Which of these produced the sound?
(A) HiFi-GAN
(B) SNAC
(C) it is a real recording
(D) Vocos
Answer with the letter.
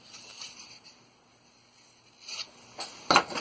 C